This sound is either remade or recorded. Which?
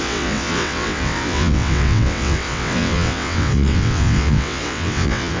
remade